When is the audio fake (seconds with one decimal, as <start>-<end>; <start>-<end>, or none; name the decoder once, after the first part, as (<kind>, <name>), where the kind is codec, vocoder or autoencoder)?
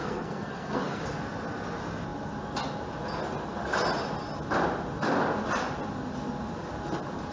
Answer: 0.0-1.0 (codec, SNAC)